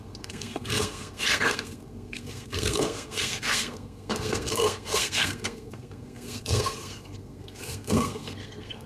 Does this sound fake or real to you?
fake